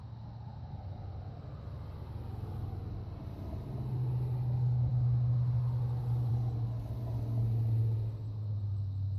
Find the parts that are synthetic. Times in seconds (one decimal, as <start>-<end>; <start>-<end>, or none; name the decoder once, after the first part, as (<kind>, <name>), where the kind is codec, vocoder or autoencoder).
none